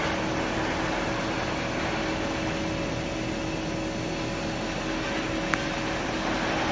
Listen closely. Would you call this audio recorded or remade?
recorded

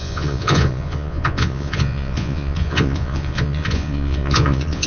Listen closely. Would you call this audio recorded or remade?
remade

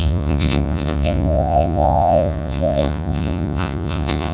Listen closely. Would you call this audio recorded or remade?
remade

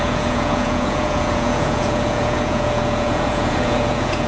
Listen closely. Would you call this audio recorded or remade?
remade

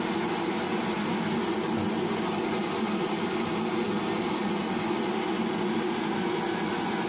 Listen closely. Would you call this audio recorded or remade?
recorded